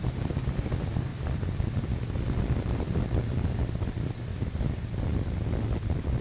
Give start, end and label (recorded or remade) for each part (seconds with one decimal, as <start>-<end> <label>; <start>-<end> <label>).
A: 0.0-1.1 recorded; 1.1-4.6 remade; 4.6-6.2 recorded